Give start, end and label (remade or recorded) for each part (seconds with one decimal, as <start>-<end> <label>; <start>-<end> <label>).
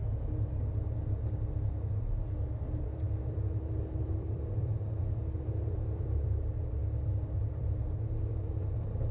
0.0-1.9 recorded; 1.9-6.8 remade; 6.8-7.4 recorded; 7.4-9.1 remade